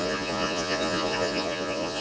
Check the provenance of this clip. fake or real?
fake